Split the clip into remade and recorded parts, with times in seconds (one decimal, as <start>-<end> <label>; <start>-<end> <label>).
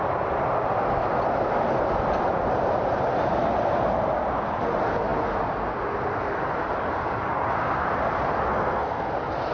0.0-8.5 recorded; 8.5-9.1 remade; 9.1-9.5 recorded